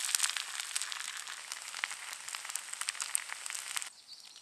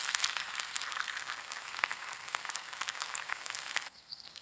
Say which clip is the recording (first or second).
first